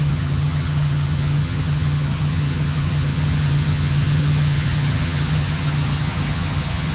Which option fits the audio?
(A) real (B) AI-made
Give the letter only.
B